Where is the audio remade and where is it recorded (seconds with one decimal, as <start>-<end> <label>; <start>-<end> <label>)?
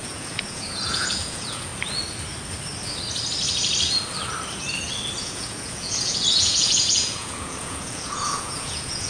0.0-1.7 remade; 1.7-5.2 recorded; 5.2-9.1 remade